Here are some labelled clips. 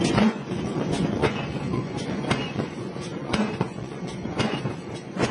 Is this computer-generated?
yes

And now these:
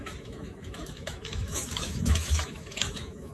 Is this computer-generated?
yes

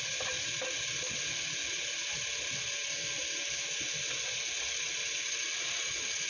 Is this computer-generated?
no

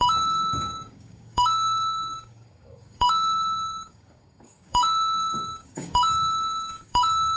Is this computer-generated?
yes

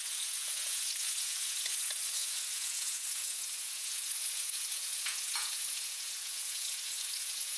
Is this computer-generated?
yes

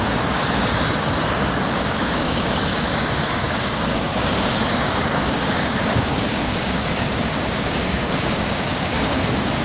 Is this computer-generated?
yes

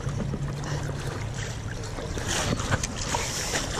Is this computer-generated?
yes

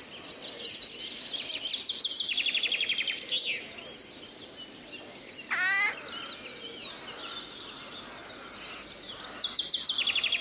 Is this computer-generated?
no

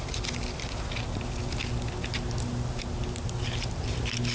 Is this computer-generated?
no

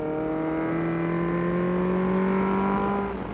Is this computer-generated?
no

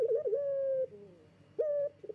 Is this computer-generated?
no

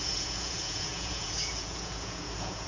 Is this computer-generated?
yes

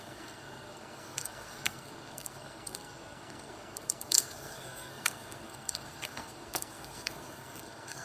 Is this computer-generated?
yes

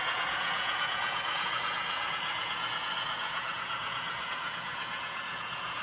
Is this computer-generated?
yes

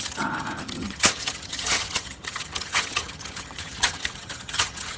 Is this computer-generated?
yes